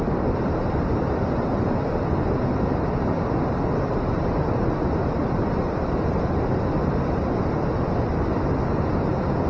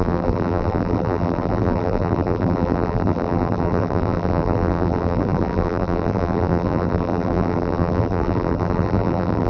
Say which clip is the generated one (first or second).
second